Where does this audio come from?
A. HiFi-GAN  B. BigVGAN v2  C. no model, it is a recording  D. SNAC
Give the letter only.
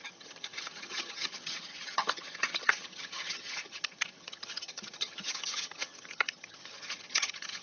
A